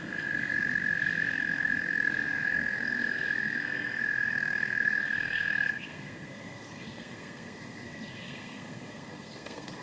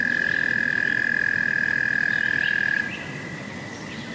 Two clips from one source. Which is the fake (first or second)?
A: first